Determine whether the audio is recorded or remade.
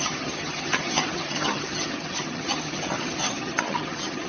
remade